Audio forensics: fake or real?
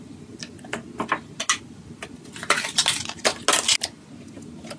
real